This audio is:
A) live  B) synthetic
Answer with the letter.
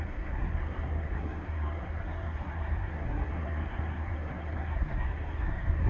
B